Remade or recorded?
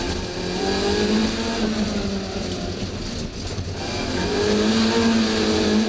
recorded